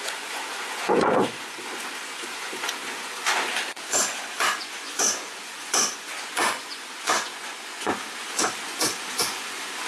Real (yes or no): no